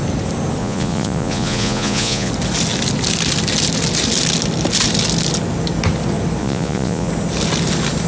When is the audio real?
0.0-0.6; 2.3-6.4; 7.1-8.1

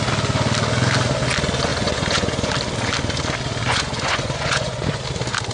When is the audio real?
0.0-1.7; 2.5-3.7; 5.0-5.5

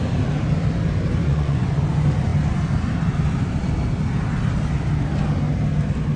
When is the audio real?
0.0-1.2; 1.8-6.2